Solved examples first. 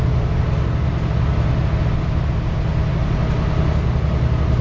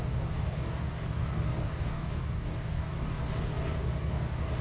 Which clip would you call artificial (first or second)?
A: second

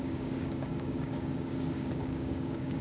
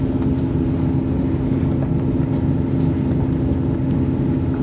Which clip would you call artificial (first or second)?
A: first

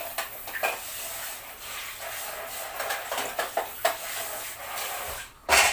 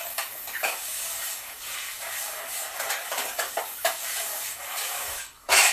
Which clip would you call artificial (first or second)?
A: second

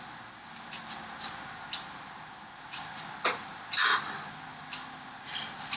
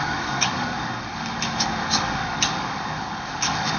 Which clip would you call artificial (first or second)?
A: second